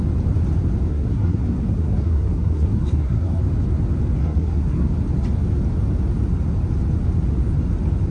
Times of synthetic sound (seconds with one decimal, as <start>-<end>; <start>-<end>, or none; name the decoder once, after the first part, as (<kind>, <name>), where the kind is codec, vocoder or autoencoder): 0.9-3.4 (codec, SNAC); 4.2-4.9